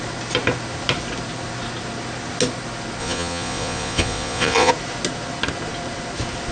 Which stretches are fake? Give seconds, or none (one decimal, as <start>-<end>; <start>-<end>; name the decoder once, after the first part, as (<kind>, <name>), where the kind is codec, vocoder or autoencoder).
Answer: 3.0-4.7 (vocoder, Vocos)

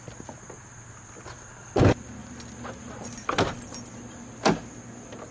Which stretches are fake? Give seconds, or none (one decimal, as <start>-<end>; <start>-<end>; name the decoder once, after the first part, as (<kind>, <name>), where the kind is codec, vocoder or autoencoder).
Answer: none

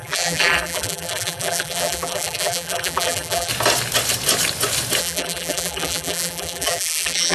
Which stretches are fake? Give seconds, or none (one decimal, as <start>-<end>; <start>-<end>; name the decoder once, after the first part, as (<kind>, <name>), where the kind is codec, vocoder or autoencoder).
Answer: 0.0-3.5 (vocoder, BigVGAN v2); 5.0-7.3

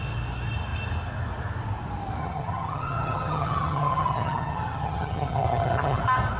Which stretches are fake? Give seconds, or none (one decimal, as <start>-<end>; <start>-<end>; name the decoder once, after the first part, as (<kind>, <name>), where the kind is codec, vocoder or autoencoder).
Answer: 2.2-6.0 (vocoder, HiFi-GAN)

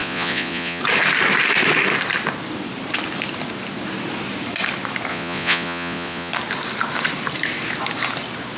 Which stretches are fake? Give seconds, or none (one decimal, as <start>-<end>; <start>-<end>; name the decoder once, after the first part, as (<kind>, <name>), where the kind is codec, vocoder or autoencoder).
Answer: 0.0-0.8 (vocoder, Vocos); 5.1-6.3